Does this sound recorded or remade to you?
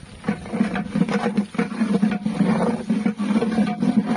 recorded